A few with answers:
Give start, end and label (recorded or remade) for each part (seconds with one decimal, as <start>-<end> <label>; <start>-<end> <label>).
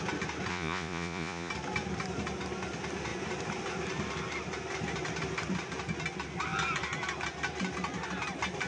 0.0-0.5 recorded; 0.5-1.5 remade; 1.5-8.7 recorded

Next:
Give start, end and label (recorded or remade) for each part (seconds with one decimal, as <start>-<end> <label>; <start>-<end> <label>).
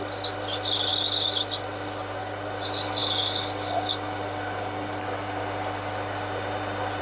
0.0-7.0 recorded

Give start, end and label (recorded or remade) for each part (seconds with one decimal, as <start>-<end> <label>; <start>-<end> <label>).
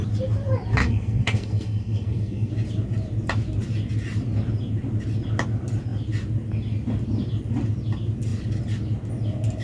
0.0-0.8 recorded; 0.8-2.5 remade; 2.5-9.6 recorded